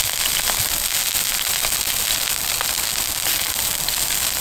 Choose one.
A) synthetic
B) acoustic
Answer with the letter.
B